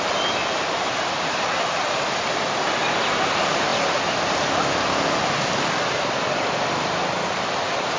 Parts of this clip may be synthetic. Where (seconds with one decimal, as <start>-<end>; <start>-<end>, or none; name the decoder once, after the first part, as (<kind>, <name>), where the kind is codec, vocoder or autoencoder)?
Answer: none